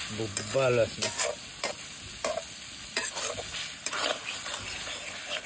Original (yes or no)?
yes